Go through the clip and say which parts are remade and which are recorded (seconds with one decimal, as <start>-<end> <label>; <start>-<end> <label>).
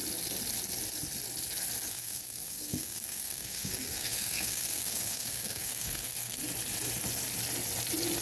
0.0-1.9 recorded; 1.9-6.4 remade; 6.4-8.2 recorded